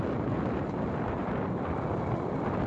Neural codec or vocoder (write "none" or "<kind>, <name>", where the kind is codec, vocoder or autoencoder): none